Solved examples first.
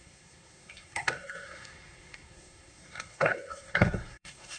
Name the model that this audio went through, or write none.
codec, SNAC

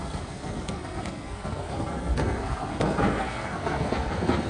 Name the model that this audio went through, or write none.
codec, SNAC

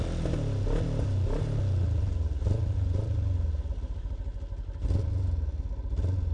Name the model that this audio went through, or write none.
none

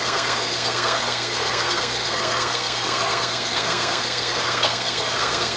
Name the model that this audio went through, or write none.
codec, SNAC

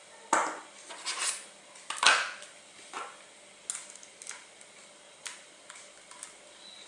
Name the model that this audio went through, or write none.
none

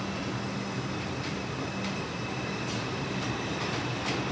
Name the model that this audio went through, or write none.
none